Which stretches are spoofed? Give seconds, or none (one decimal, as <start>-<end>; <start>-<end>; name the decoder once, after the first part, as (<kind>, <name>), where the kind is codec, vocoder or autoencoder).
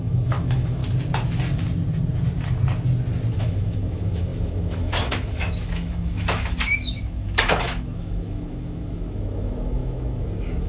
0.0-0.8 (autoencoder, DAC-VAE); 3.4-10.7